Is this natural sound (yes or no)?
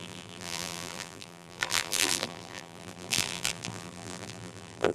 no